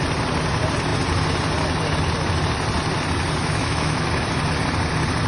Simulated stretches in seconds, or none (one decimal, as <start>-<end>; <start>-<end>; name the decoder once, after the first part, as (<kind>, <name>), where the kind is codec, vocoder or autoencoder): 3.4-4.1 (autoencoder, DAC-VAE)